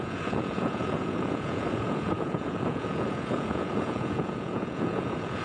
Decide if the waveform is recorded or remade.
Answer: remade